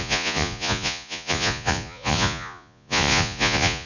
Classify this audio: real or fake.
fake